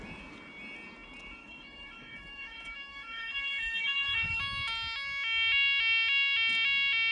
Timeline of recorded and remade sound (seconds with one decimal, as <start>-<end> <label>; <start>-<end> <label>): 0.0-1.4 recorded; 1.4-4.4 remade; 4.4-7.1 recorded